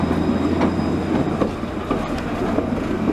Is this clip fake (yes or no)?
no